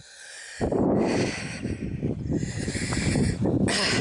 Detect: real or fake real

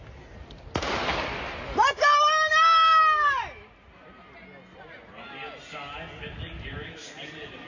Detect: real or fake real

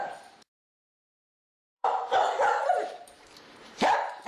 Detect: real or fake fake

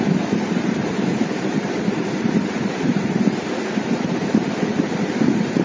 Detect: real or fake fake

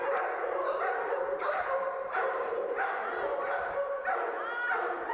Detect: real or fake real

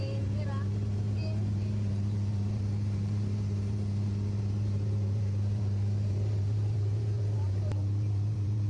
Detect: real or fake fake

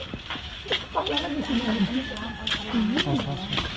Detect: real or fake real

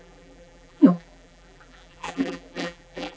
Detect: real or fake fake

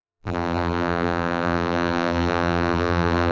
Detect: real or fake fake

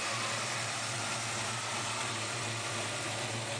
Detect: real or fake real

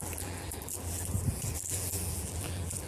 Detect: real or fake fake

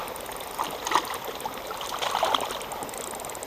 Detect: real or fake real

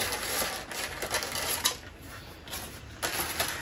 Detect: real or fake real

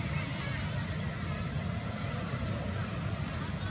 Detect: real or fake real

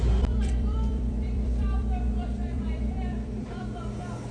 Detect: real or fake fake